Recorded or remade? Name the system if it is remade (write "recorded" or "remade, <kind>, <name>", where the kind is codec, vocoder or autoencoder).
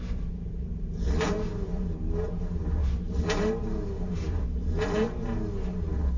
remade, vocoder, BigVGAN v2